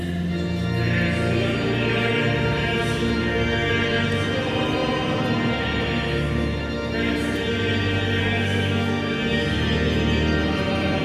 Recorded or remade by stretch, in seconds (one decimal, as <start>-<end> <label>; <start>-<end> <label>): 0.0-3.2 recorded; 3.2-3.7 remade; 3.7-8.2 recorded; 8.2-9.2 remade; 9.2-11.0 recorded